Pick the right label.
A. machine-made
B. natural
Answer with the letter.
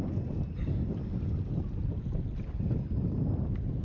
B